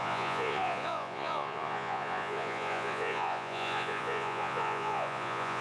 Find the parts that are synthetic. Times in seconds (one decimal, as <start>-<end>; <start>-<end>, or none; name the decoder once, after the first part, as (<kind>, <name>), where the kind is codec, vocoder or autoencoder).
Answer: 0.0-5.6 (vocoder, Vocos)